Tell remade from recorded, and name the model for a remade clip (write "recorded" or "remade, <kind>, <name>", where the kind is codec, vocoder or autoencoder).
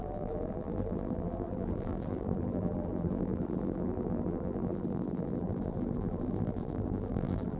remade, vocoder, BigVGAN v2